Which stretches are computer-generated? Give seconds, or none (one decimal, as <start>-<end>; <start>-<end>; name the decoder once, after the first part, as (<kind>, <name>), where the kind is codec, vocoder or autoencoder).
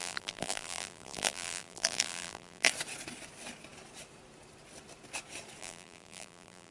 0.0-2.7 (vocoder, BigVGAN v2); 5.6-6.7